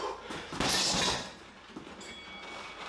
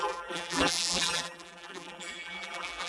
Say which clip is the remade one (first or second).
second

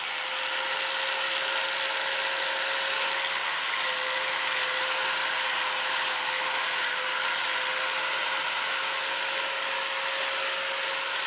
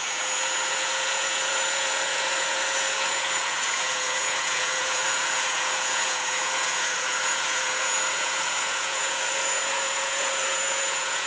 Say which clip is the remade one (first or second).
second